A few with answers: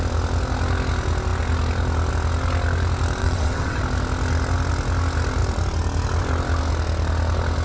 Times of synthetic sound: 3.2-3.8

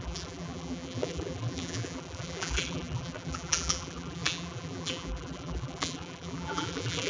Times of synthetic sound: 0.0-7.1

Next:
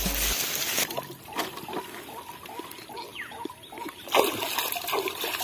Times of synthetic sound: none